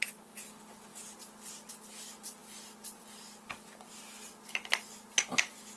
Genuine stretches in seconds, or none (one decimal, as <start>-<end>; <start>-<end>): 0.0-5.8